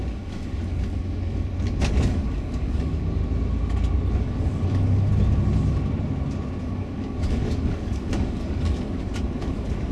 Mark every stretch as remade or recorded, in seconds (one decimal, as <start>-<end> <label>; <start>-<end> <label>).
0.0-3.2 remade; 3.2-4.2 recorded; 4.2-5.1 remade; 5.1-6.6 recorded; 6.6-9.9 remade